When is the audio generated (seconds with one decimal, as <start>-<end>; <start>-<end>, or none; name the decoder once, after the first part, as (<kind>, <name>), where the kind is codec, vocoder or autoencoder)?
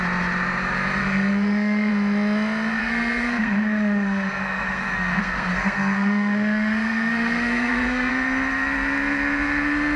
1.0-1.9 (codec, SNAC); 2.8-8.1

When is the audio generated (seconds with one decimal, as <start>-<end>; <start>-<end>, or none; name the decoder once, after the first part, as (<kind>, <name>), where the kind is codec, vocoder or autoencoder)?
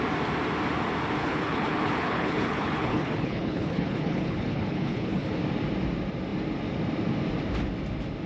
1.2-5.4 (codec, HILCodec)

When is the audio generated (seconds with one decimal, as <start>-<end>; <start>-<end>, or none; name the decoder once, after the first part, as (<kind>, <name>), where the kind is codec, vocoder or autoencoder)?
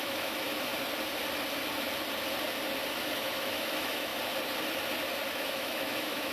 0.0-0.7 (autoencoder, DAC-VAE); 2.9-4.1; 5.3-6.3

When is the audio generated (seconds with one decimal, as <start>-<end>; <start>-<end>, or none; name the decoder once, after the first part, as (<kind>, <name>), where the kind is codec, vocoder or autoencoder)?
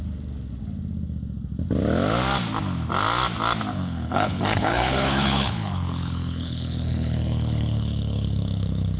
3.7-9.0 (codec, HILCodec)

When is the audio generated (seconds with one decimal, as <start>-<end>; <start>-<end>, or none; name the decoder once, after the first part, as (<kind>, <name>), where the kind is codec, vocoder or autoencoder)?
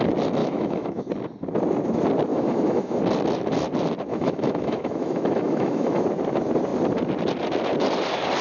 0.4-1.1 (autoencoder, DAC-VAE); 2.3-3.0; 4.1-6.0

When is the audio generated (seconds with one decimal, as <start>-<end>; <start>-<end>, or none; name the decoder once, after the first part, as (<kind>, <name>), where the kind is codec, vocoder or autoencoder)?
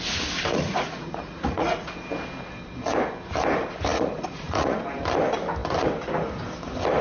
0.5-1.9 (vocoder, Vocos); 3.9-4.8